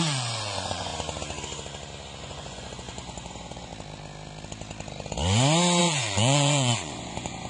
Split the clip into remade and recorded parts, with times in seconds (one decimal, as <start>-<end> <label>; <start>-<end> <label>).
0.0-0.9 remade; 0.9-2.2 recorded; 2.2-3.7 remade; 3.7-5.8 recorded; 5.8-7.5 remade